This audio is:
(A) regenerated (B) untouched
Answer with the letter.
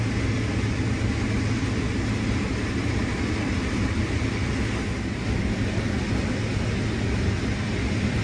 B